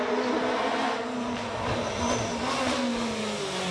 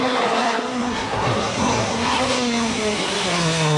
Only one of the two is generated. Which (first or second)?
second